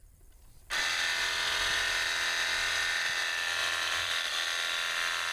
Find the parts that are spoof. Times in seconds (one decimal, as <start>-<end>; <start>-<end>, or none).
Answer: 3.6-4.3